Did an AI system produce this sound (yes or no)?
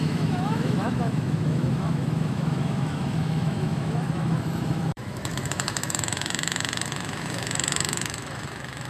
yes